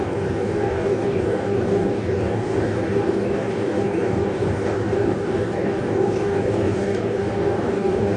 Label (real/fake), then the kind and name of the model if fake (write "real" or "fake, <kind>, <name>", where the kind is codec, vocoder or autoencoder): fake, codec, DAC